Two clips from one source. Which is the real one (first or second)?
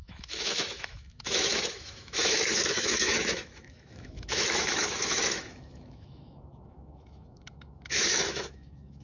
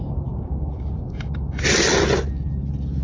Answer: second